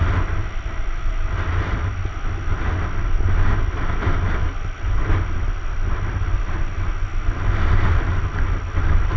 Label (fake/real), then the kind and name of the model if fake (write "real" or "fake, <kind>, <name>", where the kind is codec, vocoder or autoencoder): real